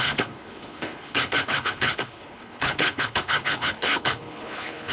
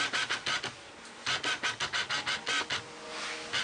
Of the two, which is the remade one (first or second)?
first